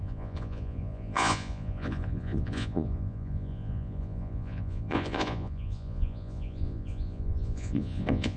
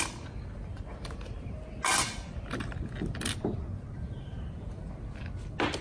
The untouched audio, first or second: second